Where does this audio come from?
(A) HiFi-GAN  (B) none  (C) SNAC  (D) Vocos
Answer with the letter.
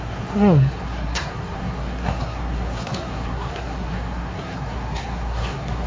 C